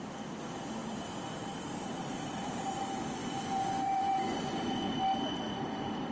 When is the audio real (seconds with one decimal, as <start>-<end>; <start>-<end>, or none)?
0.0-3.2; 5.0-6.1

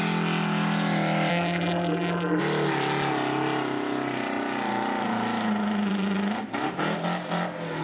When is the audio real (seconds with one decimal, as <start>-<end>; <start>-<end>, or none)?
0.0-1.3; 2.4-7.8

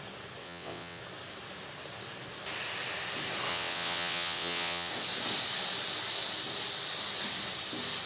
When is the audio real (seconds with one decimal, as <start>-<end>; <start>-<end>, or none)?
0.0-0.4; 1.0-3.5; 4.9-8.1

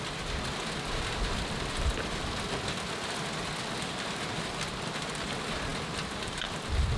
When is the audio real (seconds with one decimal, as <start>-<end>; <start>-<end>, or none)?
0.0-7.0